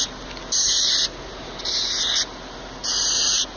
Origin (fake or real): real